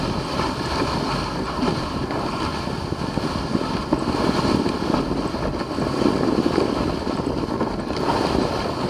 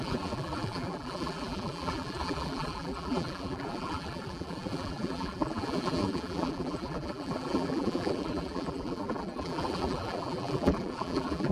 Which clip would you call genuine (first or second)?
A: first